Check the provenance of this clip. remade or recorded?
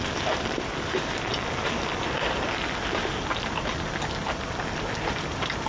recorded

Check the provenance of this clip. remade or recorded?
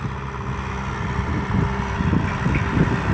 recorded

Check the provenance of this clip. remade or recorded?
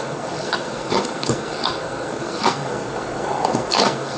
remade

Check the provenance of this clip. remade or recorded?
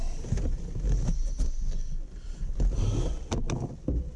recorded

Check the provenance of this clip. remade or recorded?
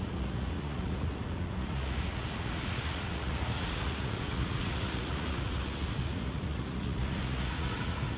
remade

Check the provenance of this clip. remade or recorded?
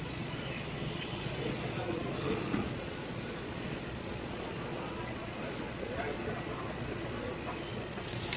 remade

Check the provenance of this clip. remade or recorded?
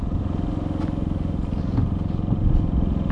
recorded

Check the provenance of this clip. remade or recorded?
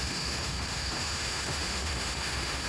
remade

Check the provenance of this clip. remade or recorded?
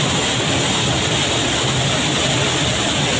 recorded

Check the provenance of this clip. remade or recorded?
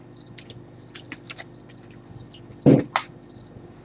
recorded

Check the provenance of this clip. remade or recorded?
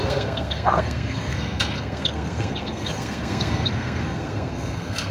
remade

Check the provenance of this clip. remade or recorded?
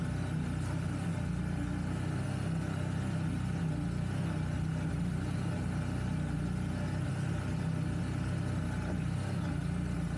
recorded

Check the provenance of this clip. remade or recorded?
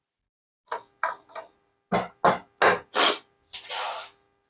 recorded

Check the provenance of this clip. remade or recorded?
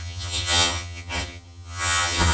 remade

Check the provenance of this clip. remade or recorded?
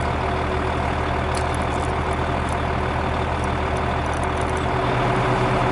recorded